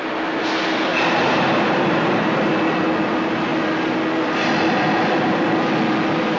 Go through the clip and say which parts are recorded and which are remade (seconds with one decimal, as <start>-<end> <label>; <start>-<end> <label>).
0.0-0.9 recorded; 0.9-2.5 remade; 2.5-6.4 recorded